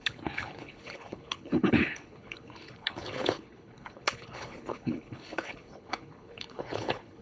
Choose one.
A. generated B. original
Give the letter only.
A